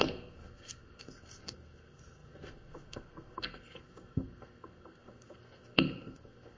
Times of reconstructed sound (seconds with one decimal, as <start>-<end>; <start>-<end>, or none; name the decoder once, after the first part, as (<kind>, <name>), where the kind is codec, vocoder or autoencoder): 0.0-6.6 (codec, SNAC)

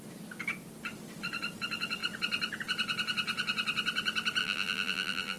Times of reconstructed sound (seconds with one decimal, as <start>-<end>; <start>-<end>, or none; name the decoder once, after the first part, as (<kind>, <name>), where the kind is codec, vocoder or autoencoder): 4.4-5.4 (vocoder, BigVGAN v2)